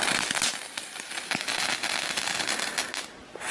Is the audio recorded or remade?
recorded